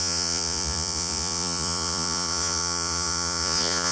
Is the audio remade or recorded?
remade